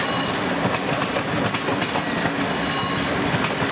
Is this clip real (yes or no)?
yes